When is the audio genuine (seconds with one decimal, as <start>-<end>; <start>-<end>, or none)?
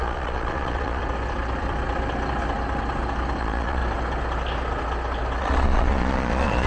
1.0-3.4; 3.8-5.4